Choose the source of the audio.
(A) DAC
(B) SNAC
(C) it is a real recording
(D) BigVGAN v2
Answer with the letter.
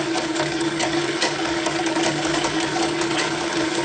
A